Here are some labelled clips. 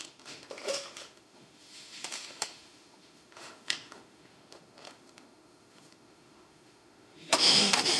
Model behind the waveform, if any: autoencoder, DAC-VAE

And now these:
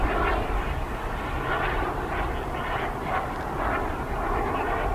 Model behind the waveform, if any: none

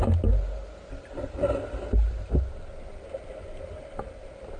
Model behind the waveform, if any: none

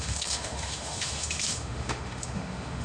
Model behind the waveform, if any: autoencoder, DAC-VAE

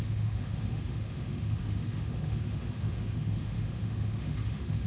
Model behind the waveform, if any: autoencoder, DAC-VAE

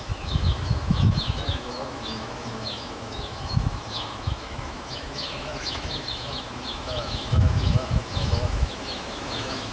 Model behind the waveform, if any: autoencoder, DAC-VAE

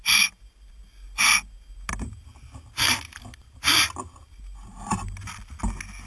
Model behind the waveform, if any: none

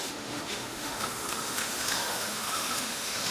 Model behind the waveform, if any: autoencoder, DAC-VAE